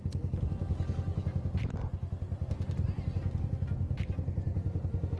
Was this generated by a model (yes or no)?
no